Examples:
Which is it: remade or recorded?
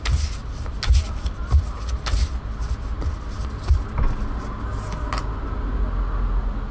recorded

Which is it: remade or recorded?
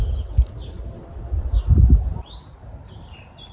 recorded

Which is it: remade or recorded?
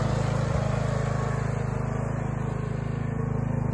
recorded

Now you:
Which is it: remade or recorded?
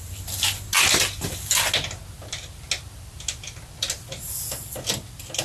recorded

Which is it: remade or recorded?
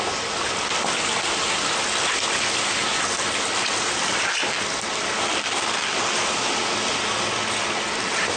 recorded